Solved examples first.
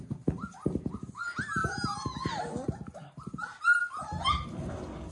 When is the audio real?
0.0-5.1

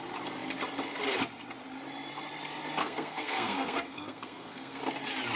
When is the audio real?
0.0-2.8; 4.8-5.4

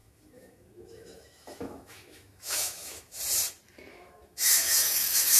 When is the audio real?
3.2-3.9

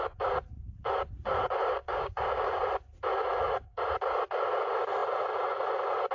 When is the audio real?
0.0-1.8; 2.6-6.1

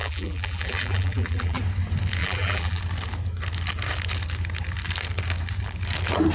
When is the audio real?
1.6-2.2; 2.8-6.3

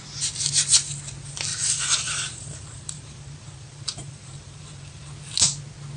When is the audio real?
0.0-1.5; 5.1-6.0